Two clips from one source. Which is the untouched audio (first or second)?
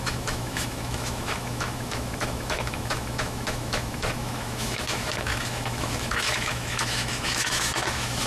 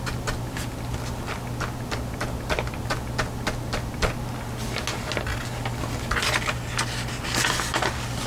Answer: second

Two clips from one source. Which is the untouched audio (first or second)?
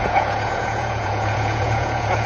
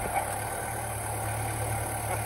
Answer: second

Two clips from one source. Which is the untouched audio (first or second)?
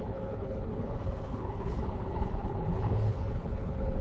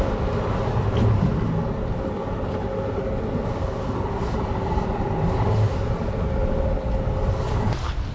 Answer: second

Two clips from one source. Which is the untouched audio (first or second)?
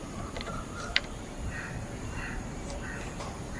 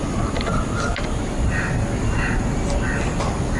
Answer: second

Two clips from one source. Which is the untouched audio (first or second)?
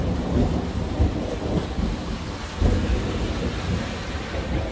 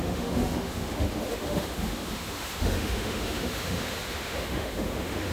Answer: first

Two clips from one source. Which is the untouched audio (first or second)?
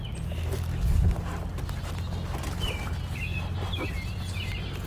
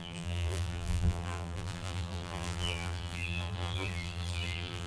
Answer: first